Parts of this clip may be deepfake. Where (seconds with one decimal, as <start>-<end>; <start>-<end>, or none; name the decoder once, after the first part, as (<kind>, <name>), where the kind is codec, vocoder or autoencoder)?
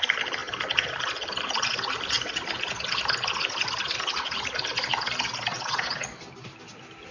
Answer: 5.5-6.1 (vocoder, Vocos)